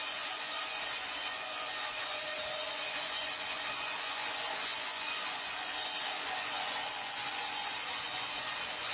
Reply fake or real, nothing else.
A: fake